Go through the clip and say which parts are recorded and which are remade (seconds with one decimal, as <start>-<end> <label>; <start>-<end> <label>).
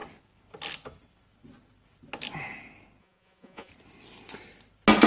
0.0-3.0 recorded; 3.0-3.7 remade; 3.7-5.1 recorded